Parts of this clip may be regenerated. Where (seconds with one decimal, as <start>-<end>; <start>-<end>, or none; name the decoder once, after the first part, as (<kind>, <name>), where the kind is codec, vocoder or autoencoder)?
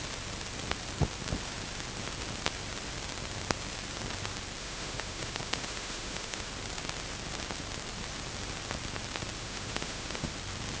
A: 4.6-6.5 (autoencoder, DAC-VAE); 9.4-10.3